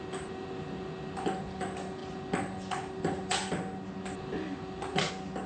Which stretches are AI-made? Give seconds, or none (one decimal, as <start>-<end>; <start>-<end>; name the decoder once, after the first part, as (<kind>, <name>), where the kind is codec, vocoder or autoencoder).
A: none